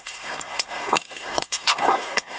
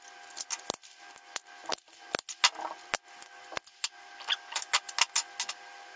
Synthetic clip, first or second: first